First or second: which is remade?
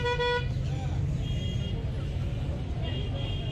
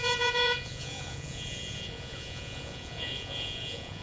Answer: second